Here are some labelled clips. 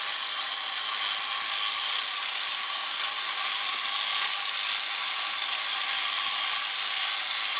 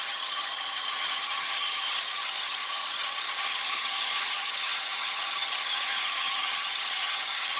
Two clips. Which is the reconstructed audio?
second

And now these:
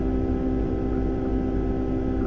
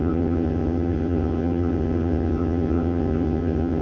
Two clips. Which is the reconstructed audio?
second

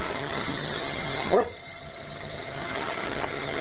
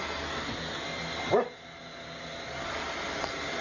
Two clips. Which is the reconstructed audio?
first